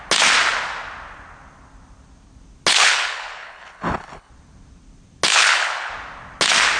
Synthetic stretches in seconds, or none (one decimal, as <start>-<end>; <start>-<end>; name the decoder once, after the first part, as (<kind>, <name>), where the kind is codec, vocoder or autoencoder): 2.7-4.3 (codec, HILCodec); 5.3-5.9